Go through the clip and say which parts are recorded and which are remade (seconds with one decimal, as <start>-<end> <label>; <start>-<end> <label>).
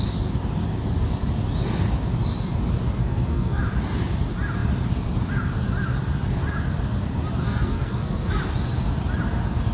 0.0-3.0 recorded; 3.0-3.6 remade; 3.6-7.4 recorded; 7.4-8.3 remade; 8.3-9.7 recorded